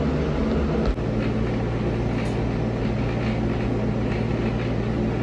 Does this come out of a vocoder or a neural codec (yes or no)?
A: no